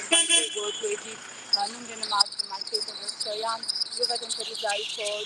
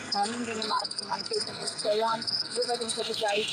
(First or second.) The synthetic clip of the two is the second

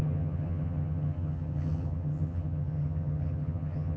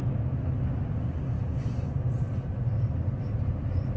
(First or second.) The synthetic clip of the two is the first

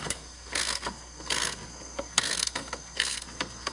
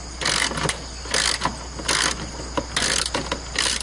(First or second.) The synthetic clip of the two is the first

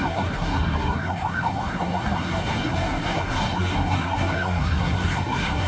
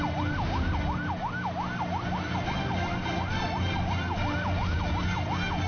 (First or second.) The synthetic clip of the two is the first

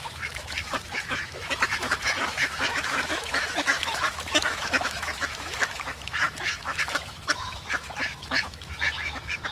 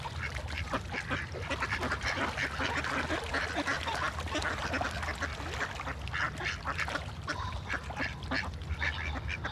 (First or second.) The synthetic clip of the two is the first